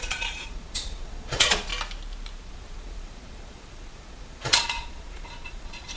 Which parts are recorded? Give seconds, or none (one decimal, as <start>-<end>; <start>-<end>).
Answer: 1.7-2.5